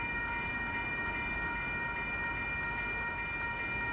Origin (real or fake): real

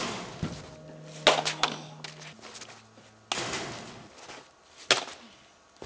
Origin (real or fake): real